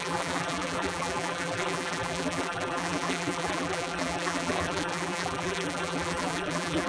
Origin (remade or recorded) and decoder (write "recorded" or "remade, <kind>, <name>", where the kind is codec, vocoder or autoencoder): remade, vocoder, BigVGAN v2